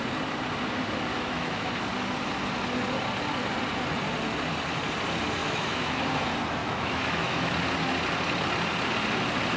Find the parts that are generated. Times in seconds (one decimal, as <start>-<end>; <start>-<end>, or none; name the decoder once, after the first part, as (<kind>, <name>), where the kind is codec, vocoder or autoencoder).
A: 1.1-1.7 (autoencoder, DAC-VAE); 5.4-6.0; 6.6-7.5